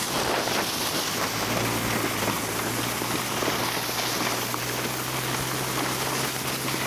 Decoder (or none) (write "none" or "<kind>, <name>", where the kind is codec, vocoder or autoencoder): none